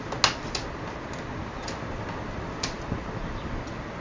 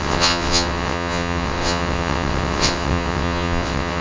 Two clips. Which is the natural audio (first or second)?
first